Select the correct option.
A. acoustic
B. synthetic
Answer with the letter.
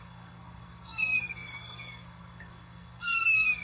B